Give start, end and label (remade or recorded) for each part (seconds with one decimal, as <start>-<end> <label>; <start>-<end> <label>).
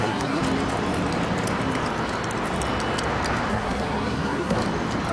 0.0-0.4 remade; 0.4-3.5 recorded; 3.5-4.6 remade; 4.6-5.1 recorded